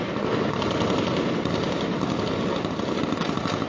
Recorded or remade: recorded